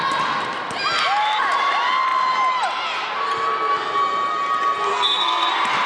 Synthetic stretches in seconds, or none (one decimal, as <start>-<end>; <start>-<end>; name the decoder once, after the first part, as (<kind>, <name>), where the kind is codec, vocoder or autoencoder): 4.9-5.5 (codec, SNAC)